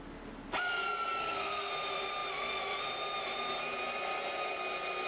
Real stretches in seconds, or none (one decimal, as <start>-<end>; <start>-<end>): 0.0-1.2; 1.7-5.1